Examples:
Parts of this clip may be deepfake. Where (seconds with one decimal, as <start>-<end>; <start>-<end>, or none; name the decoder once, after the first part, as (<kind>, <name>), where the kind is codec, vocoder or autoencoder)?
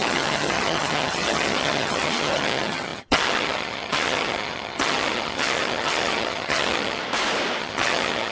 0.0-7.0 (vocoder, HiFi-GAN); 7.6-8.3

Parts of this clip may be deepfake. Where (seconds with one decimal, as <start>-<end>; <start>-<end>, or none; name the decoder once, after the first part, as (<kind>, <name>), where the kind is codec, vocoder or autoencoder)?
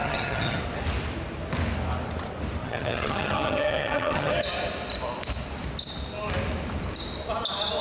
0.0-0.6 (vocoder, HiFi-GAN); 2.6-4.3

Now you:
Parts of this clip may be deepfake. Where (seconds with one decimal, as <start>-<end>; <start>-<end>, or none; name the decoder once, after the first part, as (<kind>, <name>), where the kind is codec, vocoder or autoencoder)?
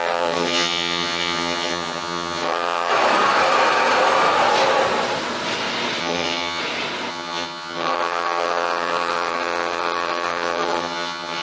0.0-2.9 (vocoder, HiFi-GAN); 6.0-6.6; 7.1-11.4